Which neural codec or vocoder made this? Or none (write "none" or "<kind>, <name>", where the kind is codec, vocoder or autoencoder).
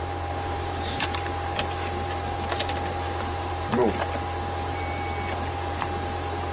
none